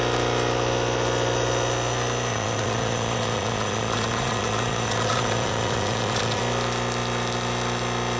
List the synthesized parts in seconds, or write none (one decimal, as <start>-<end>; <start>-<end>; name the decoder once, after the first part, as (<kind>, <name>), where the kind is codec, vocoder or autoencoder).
2.3-6.4 (vocoder, Vocos)